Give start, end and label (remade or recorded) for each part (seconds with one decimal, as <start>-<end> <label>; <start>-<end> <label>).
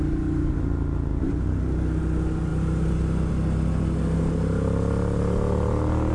0.0-6.1 recorded